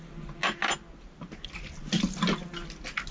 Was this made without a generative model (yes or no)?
yes